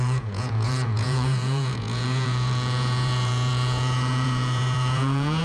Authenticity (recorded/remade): remade